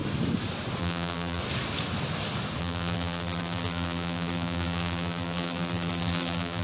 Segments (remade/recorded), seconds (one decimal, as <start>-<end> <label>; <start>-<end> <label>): 0.0-0.8 recorded; 0.8-1.4 remade; 1.4-2.6 recorded; 2.6-6.6 remade